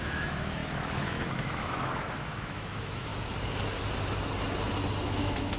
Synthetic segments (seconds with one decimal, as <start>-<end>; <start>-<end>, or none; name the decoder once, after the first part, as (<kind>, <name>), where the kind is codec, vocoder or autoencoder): 0.0-3.1 (autoencoder, DAC-VAE); 5.0-5.6

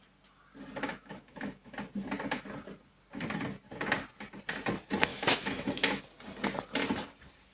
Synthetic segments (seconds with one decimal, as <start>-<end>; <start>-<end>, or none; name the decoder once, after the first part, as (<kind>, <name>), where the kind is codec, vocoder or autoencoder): 0.9-1.7 (autoencoder, DAC-VAE); 5.1-6.0

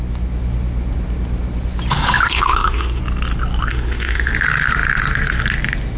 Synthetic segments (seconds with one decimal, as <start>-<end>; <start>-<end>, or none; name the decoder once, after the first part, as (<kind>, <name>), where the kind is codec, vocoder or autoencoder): 2.3-3.0 (autoencoder, DAC-VAE); 3.7-4.3

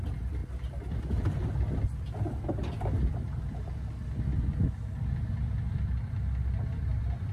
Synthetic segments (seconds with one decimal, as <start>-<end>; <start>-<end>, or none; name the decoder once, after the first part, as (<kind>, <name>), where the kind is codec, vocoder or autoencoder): none

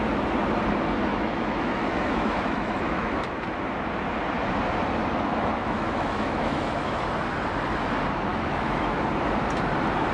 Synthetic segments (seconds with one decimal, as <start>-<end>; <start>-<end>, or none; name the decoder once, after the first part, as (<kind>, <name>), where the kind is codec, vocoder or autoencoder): 1.1-3.3 (autoencoder, DAC-VAE); 5.6-7.0; 8.3-9.0